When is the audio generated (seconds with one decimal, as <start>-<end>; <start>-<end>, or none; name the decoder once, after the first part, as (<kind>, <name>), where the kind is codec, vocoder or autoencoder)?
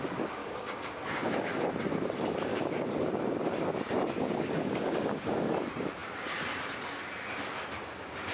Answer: 0.4-1.7 (codec, DAC); 2.5-3.1; 4.2-5.5